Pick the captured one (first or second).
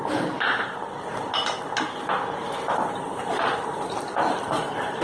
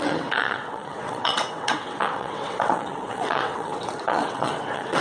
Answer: first